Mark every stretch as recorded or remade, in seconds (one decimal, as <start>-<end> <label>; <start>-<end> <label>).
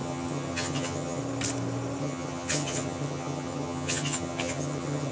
0.0-1.2 remade; 1.2-2.0 recorded; 2.0-5.1 remade